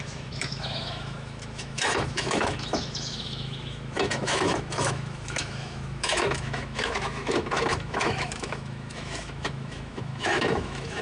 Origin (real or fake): fake